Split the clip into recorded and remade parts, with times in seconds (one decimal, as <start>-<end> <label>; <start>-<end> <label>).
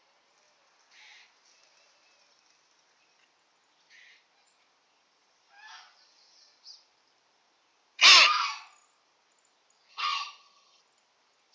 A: 0.0-9.9 recorded; 9.9-10.8 remade; 10.8-11.5 recorded